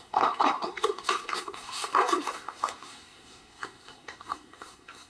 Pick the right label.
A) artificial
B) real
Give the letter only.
A